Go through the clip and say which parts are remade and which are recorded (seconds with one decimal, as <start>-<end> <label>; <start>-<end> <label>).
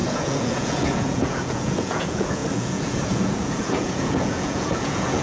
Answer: 0.0-5.2 remade